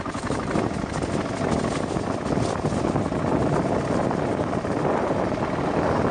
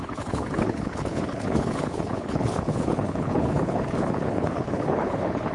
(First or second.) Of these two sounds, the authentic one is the first